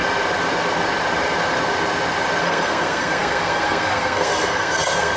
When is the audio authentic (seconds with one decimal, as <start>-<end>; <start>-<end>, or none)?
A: 0.0-2.4